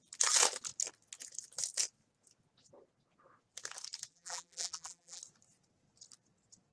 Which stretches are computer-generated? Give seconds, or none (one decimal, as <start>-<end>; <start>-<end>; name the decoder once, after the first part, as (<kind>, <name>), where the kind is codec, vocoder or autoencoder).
4.1-5.2 (vocoder, BigVGAN v2)